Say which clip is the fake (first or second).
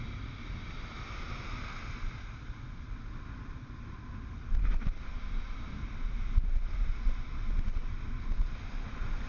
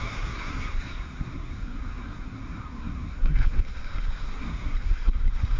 second